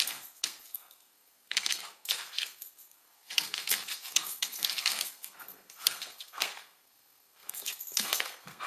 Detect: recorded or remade remade